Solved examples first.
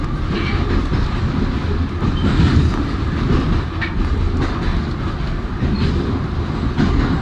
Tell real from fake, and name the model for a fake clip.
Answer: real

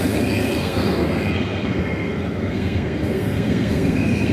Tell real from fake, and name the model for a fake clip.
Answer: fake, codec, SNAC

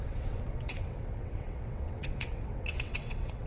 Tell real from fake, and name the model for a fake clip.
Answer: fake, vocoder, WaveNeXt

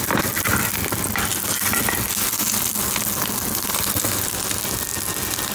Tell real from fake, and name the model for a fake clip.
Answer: real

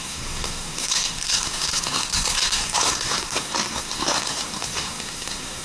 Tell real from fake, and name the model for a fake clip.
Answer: fake, codec, SNAC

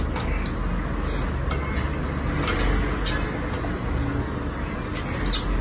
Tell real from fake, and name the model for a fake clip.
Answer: real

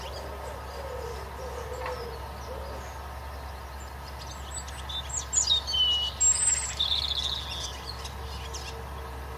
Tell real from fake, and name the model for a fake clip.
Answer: real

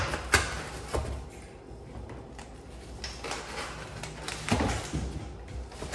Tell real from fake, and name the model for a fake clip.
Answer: real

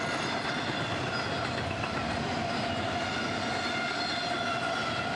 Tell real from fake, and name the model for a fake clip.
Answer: real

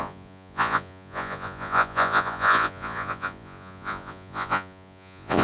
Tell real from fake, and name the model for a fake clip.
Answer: fake, vocoder, Vocos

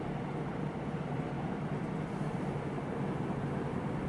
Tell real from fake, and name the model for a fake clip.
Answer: real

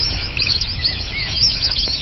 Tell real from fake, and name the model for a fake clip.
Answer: fake, autoencoder, DAC-VAE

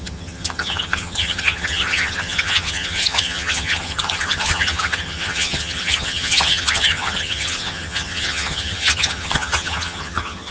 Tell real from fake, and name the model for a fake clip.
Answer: fake, vocoder, HiFi-GAN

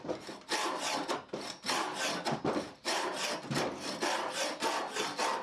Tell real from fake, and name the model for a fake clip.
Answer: real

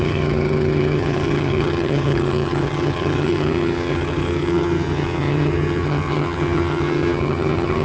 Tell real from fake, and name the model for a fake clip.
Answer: fake, vocoder, HiFi-GAN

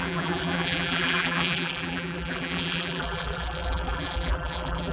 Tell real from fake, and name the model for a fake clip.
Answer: fake, vocoder, BigVGAN v2